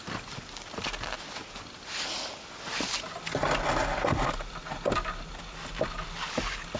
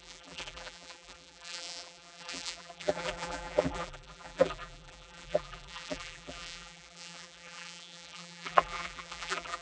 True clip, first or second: first